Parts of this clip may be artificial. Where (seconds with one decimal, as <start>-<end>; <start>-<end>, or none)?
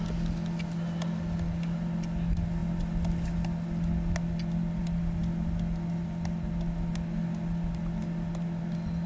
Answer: none